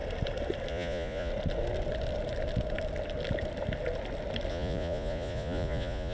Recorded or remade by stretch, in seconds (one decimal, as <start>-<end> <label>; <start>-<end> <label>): 0.0-0.7 recorded; 0.7-1.3 remade; 1.3-4.5 recorded; 4.5-6.1 remade